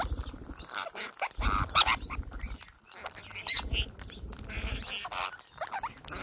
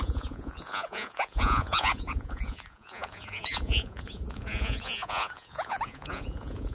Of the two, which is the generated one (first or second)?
second